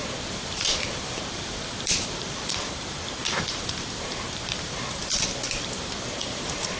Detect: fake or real fake